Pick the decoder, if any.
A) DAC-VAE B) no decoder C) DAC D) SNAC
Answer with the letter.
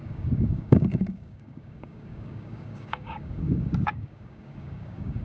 C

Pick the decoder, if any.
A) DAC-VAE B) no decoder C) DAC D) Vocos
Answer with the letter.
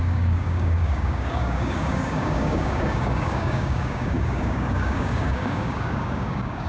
C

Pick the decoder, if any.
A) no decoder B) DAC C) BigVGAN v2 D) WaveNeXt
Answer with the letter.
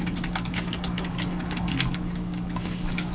B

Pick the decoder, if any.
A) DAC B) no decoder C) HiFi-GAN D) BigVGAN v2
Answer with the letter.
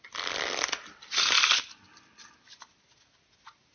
B